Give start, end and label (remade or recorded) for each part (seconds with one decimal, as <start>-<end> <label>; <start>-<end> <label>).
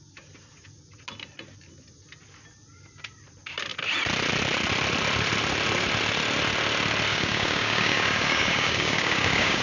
0.0-7.1 recorded; 7.1-9.6 remade